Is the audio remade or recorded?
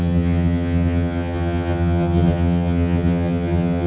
remade